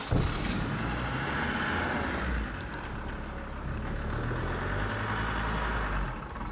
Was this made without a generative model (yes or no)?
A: yes